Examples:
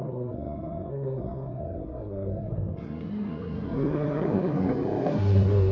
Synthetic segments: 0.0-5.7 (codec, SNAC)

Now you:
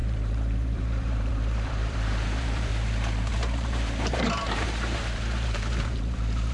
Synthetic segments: 0.0-2.7 (vocoder, BigVGAN v2); 3.3-6.5

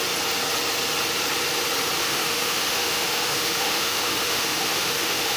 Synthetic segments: 2.0-5.4 (autoencoder, DAC-VAE)